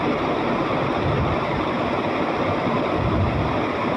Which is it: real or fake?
real